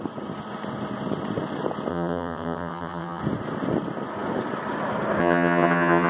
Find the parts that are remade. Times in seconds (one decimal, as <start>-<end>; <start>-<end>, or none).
1.9-3.2; 5.2-6.1